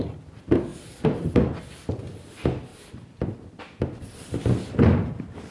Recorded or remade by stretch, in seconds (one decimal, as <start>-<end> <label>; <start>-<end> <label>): 0.0-2.7 recorded; 2.7-5.5 remade